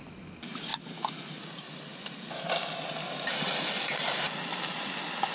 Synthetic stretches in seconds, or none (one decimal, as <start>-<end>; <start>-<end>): none